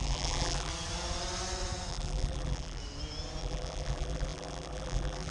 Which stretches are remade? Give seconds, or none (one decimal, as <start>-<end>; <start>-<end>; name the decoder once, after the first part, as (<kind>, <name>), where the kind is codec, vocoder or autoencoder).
0.0-0.7 (vocoder, BigVGAN v2); 1.9-2.8; 3.4-5.3